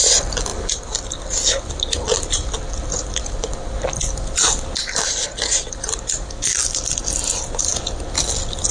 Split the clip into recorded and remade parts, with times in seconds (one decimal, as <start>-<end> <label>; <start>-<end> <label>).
0.0-8.7 recorded